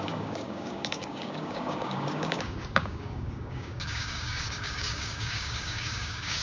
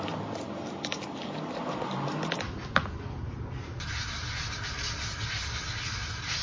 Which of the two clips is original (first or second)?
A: second